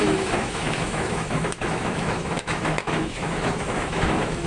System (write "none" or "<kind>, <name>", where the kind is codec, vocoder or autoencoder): autoencoder, DAC-VAE